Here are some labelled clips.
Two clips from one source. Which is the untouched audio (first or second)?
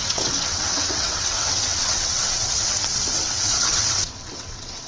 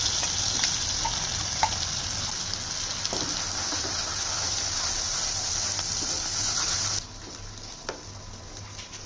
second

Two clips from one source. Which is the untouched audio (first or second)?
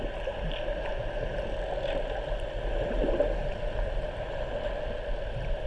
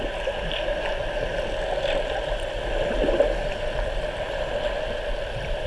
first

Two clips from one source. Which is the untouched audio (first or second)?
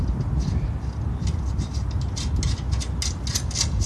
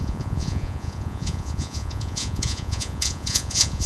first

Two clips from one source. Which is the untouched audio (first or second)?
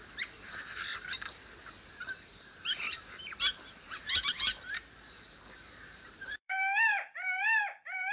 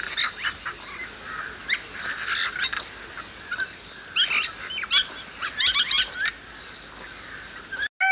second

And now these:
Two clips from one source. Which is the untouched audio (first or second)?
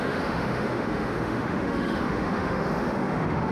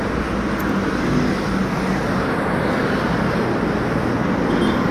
second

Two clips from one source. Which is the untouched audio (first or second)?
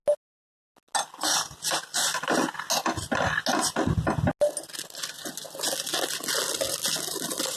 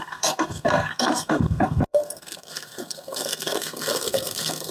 first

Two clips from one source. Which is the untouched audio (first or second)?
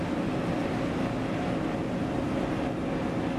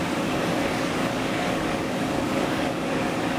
first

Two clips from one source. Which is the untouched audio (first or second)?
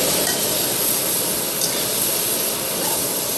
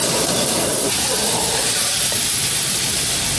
first